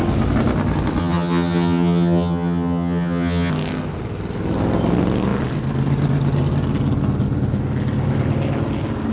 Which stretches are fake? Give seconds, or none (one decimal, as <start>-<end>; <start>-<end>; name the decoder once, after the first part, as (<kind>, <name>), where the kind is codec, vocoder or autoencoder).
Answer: 1.0-3.5 (vocoder, HiFi-GAN)